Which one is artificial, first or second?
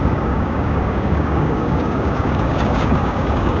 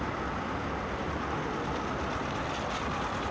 first